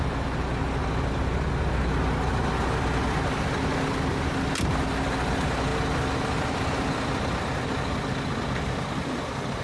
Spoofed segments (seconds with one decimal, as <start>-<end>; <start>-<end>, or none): none